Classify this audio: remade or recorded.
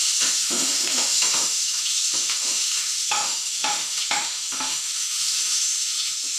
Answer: remade